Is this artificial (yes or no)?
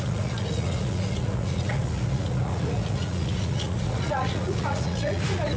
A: yes